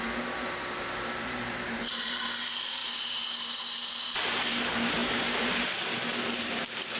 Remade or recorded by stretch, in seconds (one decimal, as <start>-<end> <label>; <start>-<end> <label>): 0.0-2.8 remade; 2.8-4.1 recorded; 4.1-7.0 remade